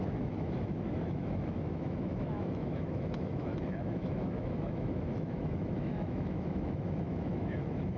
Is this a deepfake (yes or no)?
yes